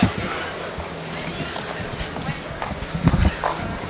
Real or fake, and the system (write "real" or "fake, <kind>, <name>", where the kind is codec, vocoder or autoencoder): fake, vocoder, BigVGAN v2